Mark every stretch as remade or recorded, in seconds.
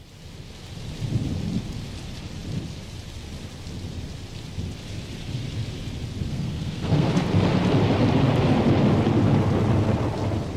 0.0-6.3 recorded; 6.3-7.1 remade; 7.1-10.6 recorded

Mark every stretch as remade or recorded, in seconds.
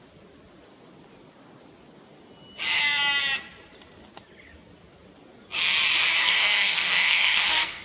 0.0-6.2 recorded; 6.2-7.8 remade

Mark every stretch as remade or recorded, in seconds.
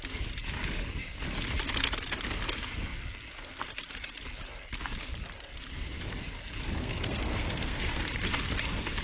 0.0-6.8 recorded; 6.8-8.0 remade; 8.0-9.0 recorded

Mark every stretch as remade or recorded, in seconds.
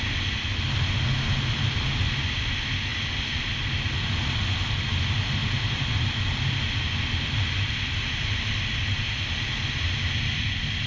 0.0-10.9 recorded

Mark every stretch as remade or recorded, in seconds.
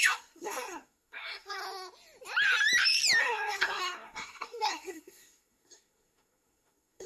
0.0-1.6 remade; 1.6-3.2 recorded; 3.2-7.1 remade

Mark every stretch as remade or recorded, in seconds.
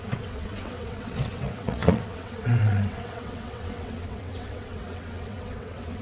0.0-6.0 remade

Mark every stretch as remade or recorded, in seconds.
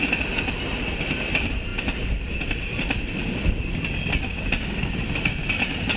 0.0-6.0 recorded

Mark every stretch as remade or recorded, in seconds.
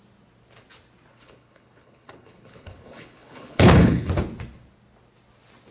0.0-1.1 recorded; 1.1-4.1 remade; 4.1-5.7 recorded